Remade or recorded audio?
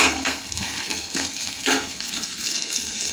remade